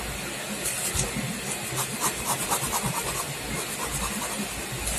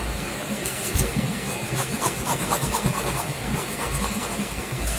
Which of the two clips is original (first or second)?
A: first